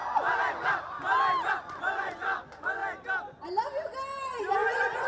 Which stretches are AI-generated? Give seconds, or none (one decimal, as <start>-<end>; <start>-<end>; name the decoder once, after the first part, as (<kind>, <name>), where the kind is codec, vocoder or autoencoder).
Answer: 1.5-2.8 (vocoder, Vocos); 4.4-5.1